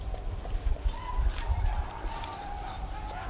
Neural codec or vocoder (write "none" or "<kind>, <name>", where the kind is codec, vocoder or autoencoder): none